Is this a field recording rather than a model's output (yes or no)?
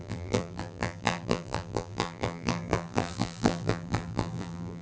no